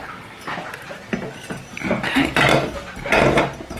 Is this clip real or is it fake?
real